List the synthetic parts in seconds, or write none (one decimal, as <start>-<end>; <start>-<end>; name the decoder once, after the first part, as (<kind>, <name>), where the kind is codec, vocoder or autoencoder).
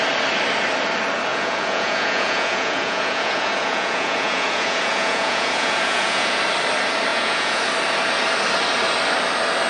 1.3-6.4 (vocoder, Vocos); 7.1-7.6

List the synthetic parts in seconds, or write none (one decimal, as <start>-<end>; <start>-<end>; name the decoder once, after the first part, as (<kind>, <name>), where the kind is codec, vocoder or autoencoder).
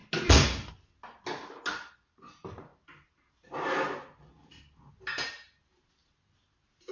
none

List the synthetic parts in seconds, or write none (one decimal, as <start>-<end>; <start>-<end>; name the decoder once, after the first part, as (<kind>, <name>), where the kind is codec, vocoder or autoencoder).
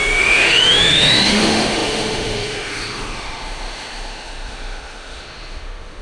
0.0-6.0 (autoencoder, DAC-VAE)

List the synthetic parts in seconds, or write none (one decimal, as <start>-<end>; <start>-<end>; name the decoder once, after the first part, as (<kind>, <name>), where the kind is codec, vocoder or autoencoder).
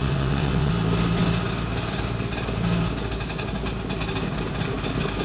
0.0-0.7 (vocoder, WaveNeXt)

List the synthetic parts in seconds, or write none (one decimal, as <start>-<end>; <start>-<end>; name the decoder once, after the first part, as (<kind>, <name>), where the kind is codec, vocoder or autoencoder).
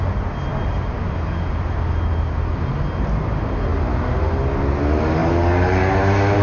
none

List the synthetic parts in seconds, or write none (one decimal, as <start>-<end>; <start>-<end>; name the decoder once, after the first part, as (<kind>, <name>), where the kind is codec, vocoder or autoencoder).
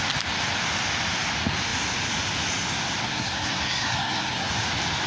3.0-4.5 (codec, SNAC)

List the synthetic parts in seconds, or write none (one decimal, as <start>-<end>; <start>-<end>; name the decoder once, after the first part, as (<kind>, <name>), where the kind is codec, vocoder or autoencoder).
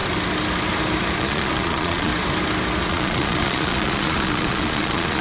1.2-2.1 (vocoder, Vocos); 2.9-5.2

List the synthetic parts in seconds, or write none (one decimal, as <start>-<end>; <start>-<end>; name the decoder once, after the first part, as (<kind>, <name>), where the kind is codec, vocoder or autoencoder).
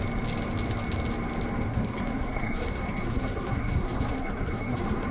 1.7-5.1 (codec, SNAC)